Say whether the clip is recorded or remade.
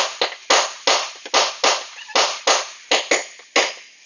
recorded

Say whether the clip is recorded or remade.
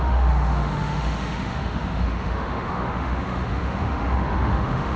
remade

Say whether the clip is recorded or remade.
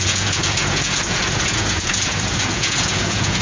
remade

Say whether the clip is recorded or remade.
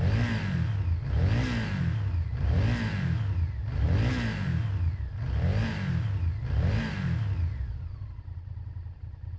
recorded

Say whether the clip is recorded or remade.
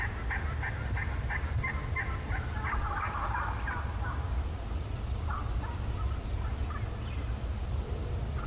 recorded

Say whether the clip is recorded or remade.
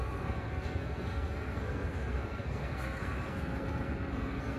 remade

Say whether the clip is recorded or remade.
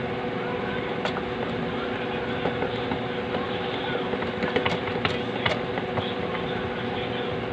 recorded